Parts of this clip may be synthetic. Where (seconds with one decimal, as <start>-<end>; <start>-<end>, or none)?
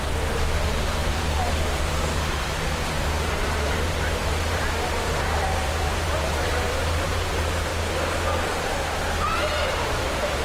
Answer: 0.0-7.7; 9.7-10.4